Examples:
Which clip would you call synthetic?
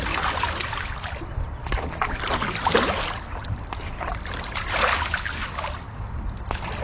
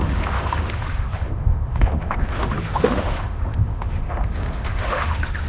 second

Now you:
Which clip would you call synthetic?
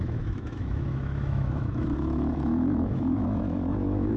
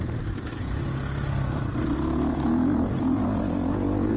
first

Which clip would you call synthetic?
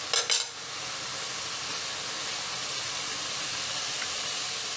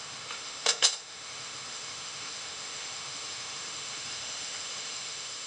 second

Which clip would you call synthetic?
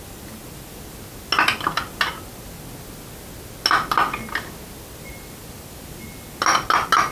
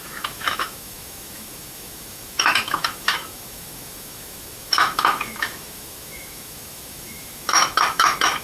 second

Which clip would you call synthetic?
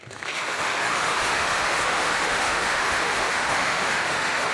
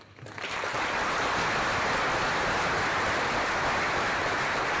first